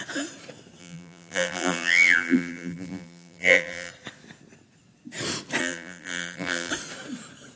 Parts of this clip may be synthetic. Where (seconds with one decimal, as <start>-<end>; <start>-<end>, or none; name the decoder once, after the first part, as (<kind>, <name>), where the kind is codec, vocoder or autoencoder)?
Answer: 0.8-3.9 (vocoder, BigVGAN v2); 5.6-6.7